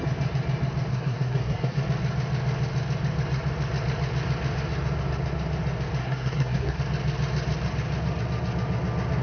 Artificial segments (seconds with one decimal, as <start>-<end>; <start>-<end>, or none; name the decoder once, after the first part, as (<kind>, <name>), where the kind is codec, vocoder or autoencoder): 0.9-1.8 (codec, SNAC); 6.0-6.8